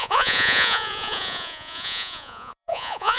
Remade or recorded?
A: remade